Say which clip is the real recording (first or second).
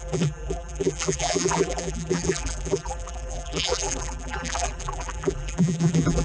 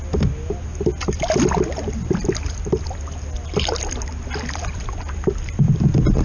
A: second